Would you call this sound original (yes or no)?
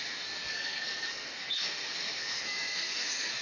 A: no